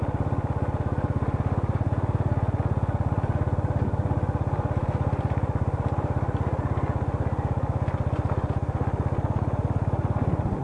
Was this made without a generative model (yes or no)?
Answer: yes